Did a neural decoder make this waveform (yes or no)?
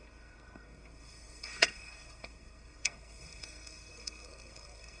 yes